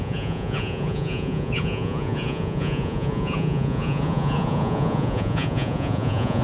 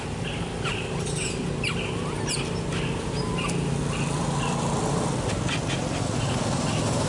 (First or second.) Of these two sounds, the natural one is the second